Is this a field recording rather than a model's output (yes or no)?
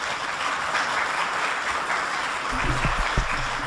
yes